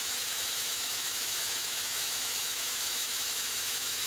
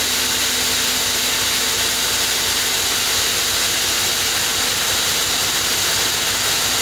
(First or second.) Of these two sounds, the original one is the second